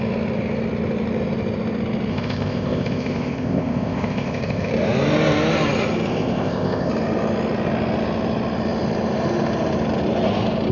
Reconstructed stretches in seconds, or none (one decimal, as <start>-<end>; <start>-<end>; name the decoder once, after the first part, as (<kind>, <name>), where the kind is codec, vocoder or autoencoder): 2.1-4.7 (codec, ZipCodec); 6.1-6.9